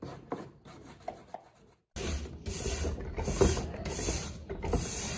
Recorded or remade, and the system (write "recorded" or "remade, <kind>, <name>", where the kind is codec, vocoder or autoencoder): recorded